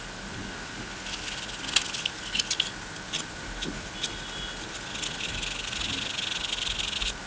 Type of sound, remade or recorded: recorded